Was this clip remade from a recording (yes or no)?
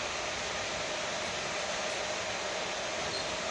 no